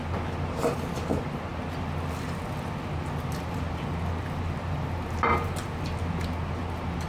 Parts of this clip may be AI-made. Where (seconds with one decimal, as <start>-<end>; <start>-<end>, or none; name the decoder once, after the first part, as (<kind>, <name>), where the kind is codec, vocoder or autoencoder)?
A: none